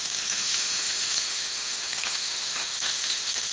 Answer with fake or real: fake